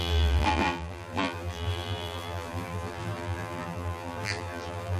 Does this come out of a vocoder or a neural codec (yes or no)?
yes